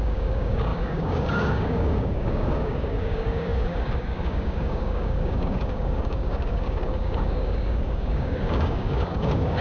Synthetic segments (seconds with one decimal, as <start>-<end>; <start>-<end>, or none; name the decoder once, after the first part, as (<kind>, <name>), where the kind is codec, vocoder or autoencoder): 0.0-9.6 (codec, DAC)